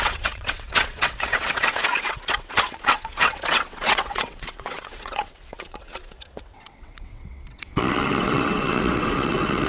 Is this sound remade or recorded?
remade